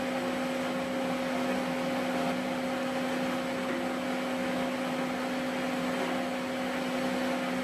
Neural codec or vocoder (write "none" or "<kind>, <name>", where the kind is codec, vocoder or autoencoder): none